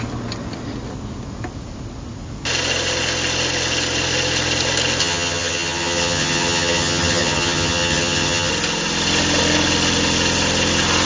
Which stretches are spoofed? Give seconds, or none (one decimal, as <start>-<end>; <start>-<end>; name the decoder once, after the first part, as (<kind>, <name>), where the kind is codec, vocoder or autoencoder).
5.0-8.5 (vocoder, HiFi-GAN)